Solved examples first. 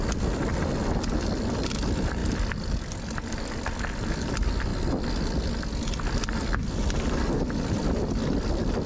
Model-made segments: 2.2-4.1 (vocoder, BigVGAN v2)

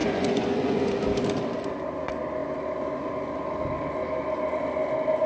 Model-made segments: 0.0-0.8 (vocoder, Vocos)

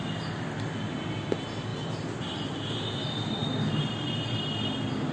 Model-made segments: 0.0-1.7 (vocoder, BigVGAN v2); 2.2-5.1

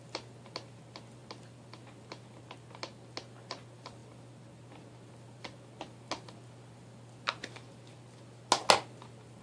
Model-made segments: none